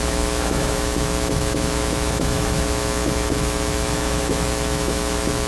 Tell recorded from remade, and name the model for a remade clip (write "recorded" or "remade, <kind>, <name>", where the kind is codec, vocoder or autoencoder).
remade, autoencoder, DAC-VAE